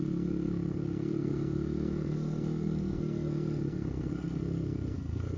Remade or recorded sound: remade